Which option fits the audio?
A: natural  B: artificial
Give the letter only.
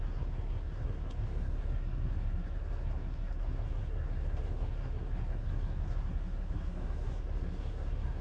B